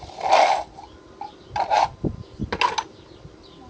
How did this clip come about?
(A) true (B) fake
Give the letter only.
A